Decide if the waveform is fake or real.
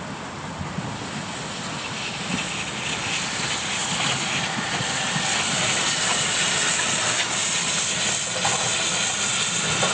real